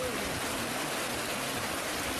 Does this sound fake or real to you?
real